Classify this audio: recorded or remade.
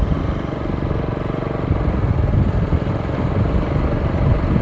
recorded